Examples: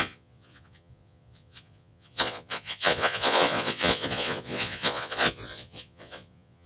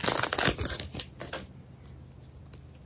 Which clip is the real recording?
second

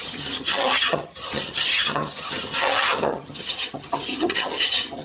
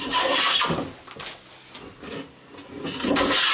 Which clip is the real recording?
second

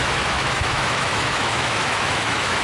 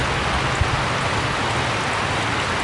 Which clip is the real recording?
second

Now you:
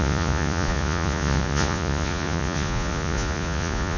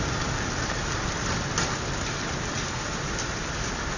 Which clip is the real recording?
second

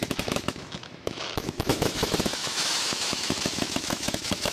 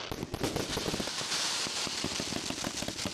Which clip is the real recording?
second